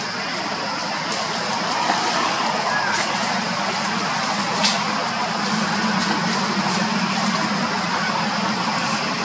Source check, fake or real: real